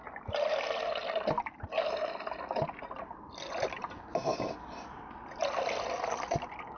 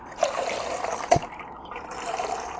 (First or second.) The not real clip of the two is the second